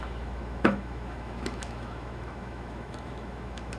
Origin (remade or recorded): remade